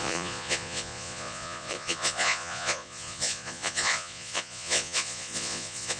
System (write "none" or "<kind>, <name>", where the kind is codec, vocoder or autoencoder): vocoder, Vocos